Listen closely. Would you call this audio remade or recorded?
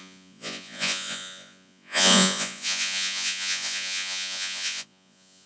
remade